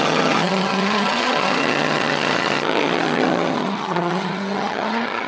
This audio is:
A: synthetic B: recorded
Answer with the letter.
A